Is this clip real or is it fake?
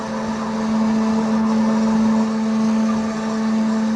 real